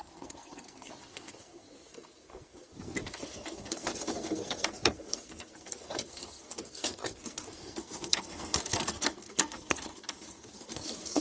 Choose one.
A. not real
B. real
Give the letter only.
A